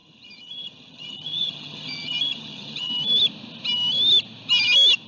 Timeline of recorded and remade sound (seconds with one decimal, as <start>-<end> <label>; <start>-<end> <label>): 0.0-2.9 remade; 2.9-5.1 recorded